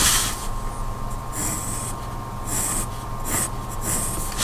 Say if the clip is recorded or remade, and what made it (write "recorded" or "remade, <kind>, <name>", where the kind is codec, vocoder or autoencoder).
recorded